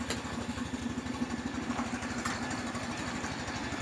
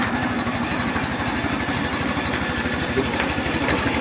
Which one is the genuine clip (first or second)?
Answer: first